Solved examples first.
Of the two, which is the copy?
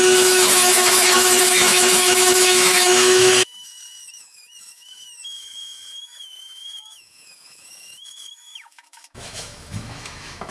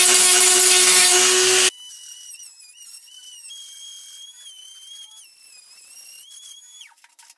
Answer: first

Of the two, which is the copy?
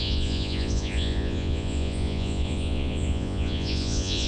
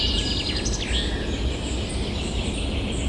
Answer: first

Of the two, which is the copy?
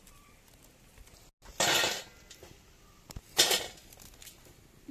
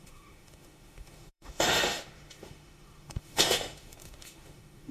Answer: second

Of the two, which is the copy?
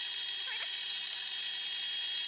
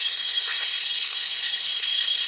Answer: second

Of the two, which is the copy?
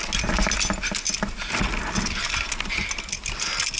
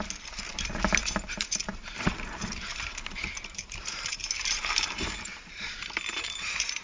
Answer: second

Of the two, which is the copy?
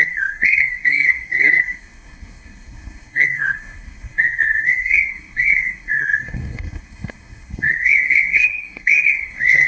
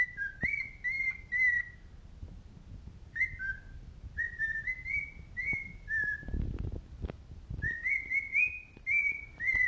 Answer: first